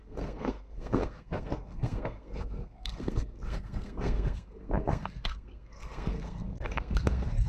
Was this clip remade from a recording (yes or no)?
yes